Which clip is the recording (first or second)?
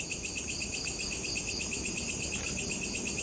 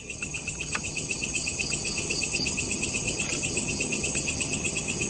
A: first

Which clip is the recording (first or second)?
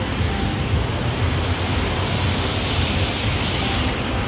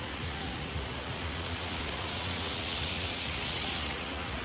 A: first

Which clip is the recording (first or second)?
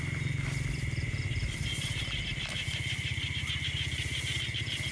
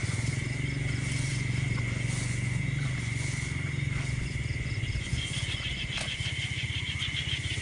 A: first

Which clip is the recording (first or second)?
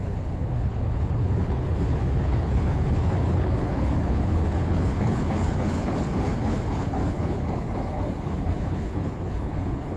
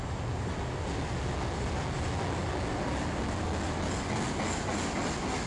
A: second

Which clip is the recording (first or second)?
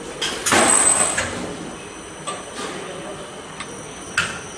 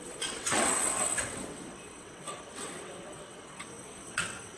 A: first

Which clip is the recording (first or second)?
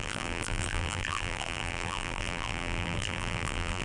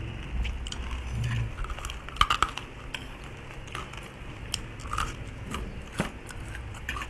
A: second